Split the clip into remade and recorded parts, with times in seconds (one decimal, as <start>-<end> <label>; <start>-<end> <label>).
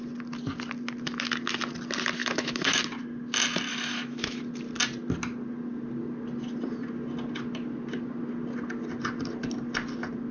0.0-2.2 recorded; 2.2-2.8 remade; 2.8-3.7 recorded; 3.7-4.4 remade; 4.4-10.3 recorded